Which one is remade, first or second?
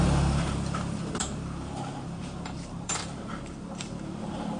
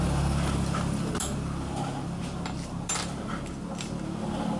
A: first